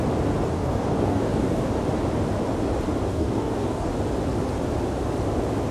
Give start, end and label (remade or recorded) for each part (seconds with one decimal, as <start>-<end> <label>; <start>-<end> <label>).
0.0-0.5 recorded; 0.5-1.7 remade; 1.7-3.1 recorded; 3.1-3.9 remade; 3.9-5.7 recorded